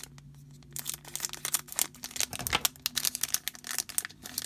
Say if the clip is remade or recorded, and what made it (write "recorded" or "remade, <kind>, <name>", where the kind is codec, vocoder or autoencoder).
recorded